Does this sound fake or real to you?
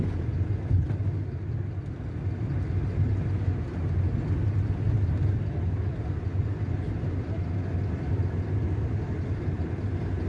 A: real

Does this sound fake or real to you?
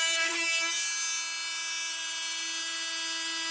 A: real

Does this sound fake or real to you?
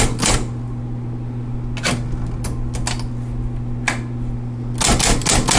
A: real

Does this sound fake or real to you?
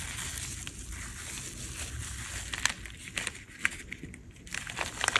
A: real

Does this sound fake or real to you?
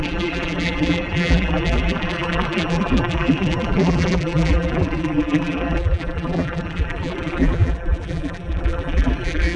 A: fake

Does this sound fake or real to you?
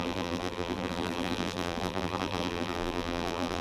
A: fake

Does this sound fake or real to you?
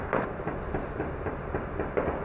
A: fake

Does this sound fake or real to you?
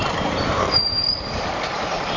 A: fake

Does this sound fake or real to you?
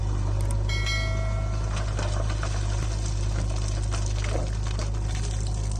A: real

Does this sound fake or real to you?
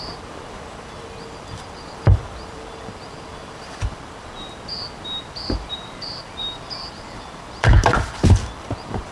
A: fake